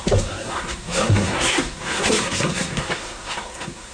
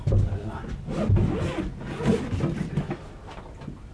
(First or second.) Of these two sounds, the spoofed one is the first